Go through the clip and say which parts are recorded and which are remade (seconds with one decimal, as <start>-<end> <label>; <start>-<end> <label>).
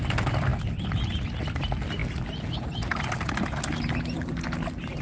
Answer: 0.0-5.0 recorded